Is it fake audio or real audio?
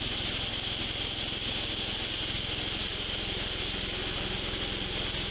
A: real